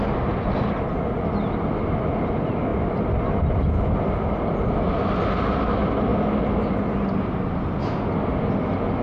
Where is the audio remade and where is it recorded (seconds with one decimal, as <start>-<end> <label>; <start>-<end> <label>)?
0.0-9.0 recorded